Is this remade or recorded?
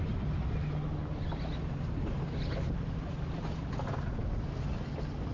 recorded